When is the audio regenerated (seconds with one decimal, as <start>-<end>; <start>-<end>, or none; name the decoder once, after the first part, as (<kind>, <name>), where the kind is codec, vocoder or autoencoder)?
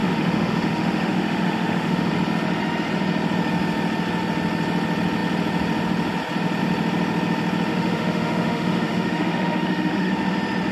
0.0-2.1 (autoencoder, DAC-VAE); 7.7-10.1